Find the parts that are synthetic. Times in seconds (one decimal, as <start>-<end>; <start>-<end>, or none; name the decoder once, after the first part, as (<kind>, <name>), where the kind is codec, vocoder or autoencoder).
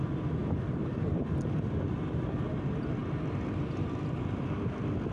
0.4-1.0 (vocoder, BigVGAN v2); 3.0-3.6